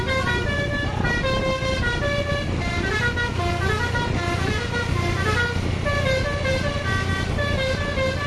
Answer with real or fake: real